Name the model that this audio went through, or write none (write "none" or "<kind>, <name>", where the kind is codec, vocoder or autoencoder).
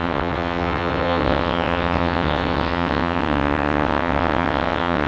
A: vocoder, WaveNeXt